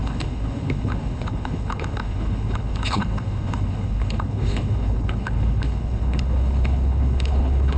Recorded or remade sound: remade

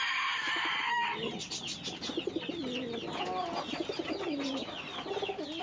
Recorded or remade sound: recorded